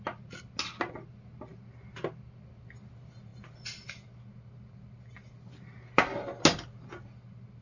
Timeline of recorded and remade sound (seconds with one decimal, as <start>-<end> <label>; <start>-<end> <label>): 0.0-7.6 recorded